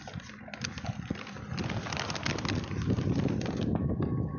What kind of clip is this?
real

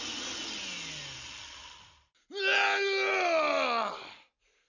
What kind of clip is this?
real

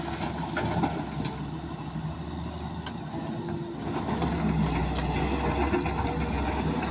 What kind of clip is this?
real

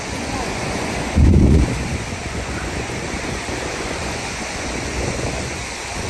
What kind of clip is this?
fake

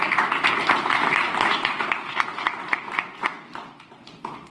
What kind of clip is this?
real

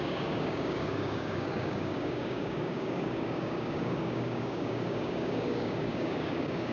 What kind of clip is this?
fake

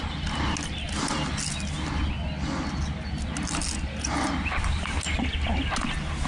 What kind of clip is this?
real